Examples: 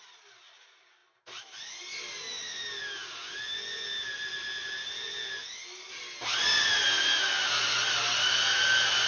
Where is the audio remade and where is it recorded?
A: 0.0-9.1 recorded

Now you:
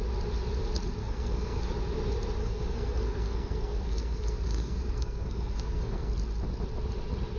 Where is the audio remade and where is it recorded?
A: 0.0-1.0 recorded; 1.0-1.6 remade; 1.6-2.4 recorded; 2.4-6.1 remade; 6.1-7.4 recorded